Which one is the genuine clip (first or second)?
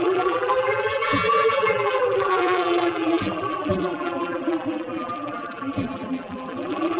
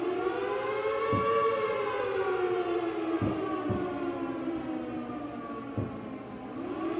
second